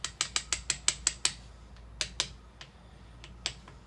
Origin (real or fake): real